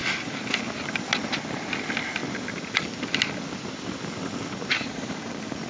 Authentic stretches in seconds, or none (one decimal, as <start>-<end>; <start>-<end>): 0.0-5.7